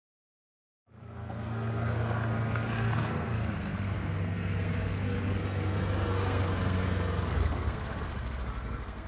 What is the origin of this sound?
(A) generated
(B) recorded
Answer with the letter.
A